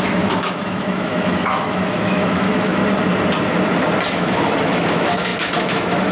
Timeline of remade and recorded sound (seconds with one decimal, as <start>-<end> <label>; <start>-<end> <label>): 0.0-2.8 remade; 2.8-4.1 recorded; 4.1-6.1 remade